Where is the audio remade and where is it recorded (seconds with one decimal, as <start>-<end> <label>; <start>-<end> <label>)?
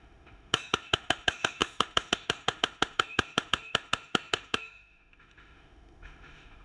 0.0-6.6 remade